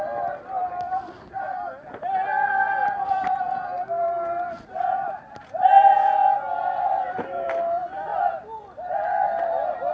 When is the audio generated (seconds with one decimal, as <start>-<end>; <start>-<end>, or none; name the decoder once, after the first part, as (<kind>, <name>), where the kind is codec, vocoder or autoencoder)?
0.0-2.1 (vocoder, BigVGAN v2); 3.1-6.2; 6.8-8.1; 8.6-9.9